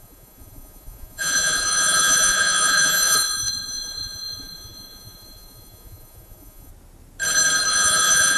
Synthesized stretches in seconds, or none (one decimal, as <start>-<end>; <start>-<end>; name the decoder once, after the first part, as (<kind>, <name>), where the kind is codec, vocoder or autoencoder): 0.0-6.7 (vocoder, Vocos); 7.7-8.4